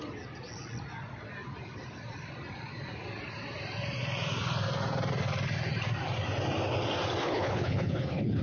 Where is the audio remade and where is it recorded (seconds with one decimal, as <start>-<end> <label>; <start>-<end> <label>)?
0.0-7.2 recorded; 7.2-8.4 remade